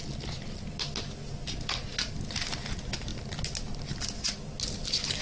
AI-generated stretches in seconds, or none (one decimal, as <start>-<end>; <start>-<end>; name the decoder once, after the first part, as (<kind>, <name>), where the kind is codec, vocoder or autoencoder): none